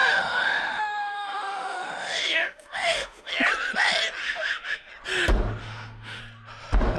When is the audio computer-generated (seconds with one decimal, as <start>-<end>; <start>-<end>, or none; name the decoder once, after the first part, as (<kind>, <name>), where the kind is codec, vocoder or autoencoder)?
0.0-3.3 (autoencoder, DAC-VAE); 4.2-4.9; 5.6-6.2